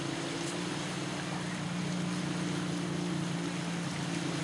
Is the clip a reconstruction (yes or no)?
no